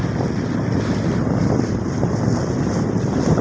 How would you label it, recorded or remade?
recorded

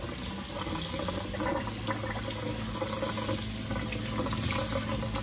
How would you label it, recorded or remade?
recorded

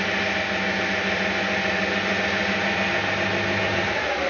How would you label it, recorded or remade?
recorded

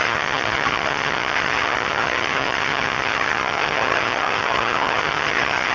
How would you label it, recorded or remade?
remade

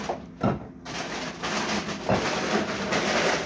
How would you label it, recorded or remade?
recorded